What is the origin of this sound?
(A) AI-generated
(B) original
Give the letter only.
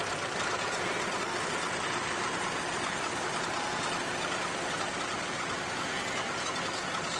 B